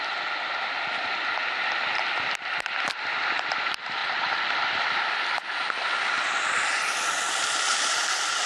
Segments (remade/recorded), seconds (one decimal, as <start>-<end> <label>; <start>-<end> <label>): 0.0-8.5 recorded